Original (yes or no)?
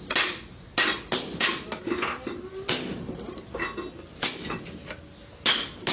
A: yes